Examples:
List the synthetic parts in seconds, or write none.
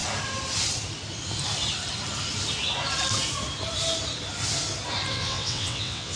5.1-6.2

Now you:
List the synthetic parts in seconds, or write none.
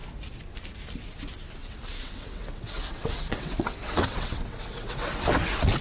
1.6-5.1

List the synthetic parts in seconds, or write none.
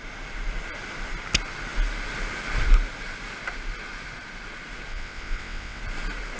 4.9-5.8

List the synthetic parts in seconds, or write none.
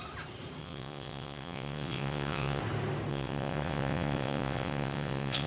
0.6-2.6; 3.1-5.5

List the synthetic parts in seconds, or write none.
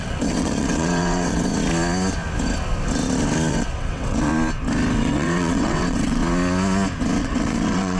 0.0-1.5; 3.5-4.3; 5.0-6.2; 7.2-8.0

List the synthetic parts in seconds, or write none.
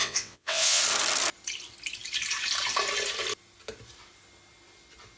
0.0-0.8